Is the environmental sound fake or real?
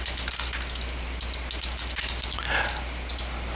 real